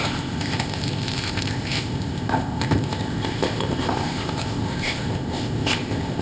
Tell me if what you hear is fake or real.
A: fake